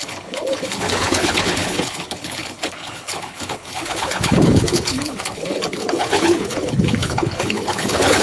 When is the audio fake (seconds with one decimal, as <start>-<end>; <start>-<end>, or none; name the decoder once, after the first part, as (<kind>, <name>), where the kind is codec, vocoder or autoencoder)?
0.0-8.2 (codec, HILCodec)